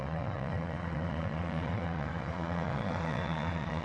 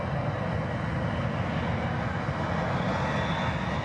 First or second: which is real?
second